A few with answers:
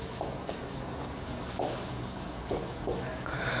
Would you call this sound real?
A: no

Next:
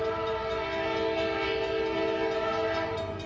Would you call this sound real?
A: yes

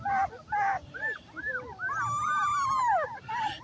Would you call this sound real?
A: yes